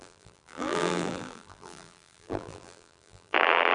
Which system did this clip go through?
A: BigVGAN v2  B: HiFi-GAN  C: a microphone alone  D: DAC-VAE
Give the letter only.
A